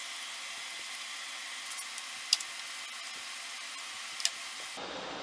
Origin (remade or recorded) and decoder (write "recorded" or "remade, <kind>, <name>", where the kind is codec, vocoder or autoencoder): recorded